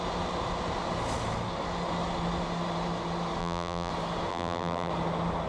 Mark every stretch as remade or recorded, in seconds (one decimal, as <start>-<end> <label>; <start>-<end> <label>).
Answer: 0.0-3.4 recorded; 3.4-3.9 remade; 3.9-4.3 recorded; 4.3-4.9 remade; 4.9-5.5 recorded